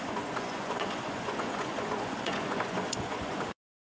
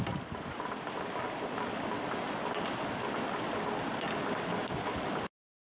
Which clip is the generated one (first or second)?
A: first